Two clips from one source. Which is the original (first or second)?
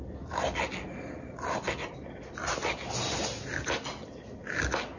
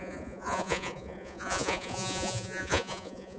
first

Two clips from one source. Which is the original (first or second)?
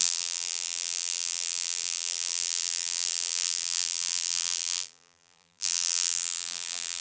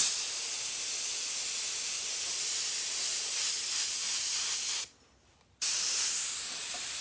second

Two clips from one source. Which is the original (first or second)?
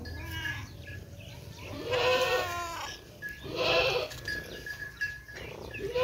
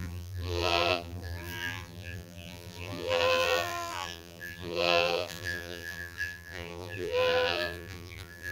first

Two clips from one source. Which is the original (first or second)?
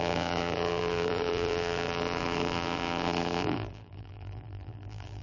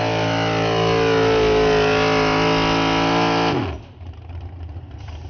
second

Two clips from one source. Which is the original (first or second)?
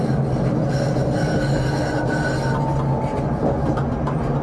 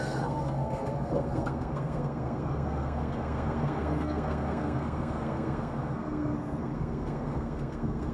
first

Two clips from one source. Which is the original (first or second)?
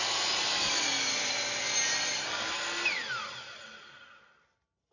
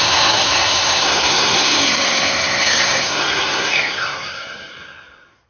first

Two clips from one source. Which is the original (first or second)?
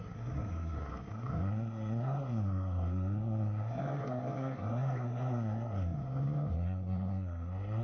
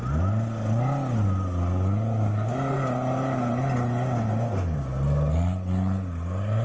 second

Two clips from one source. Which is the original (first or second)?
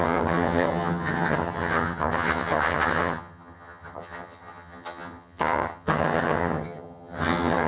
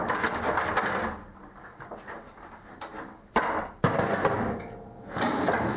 second